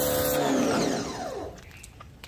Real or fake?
real